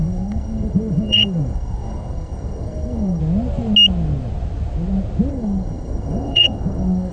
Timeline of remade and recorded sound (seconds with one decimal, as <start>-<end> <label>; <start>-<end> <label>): 0.0-3.2 remade; 3.2-5.3 recorded; 5.3-7.1 remade